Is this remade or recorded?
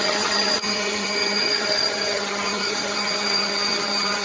remade